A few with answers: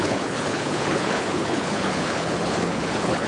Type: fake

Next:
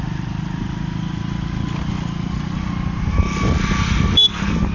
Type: real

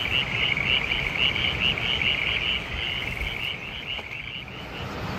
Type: real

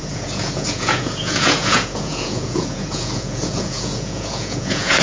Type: fake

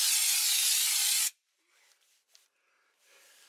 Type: real